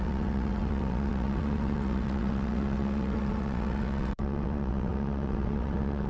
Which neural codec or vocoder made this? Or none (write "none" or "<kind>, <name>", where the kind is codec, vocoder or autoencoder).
vocoder, WaveNeXt